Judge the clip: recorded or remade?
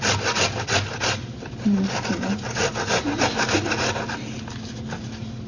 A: recorded